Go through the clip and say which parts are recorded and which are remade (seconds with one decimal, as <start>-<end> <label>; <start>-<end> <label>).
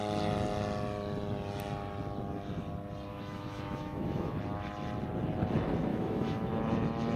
0.0-3.1 recorded; 3.1-4.4 remade; 4.4-5.9 recorded; 5.9-6.5 remade; 6.5-7.2 recorded